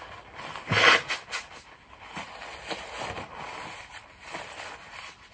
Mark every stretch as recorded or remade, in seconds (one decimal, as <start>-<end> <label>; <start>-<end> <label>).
0.0-5.3 recorded